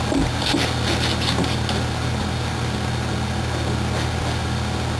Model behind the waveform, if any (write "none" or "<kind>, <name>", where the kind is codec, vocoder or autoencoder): none